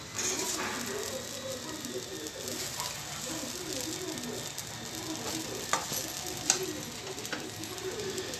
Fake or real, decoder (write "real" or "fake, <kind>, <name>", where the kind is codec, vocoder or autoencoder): real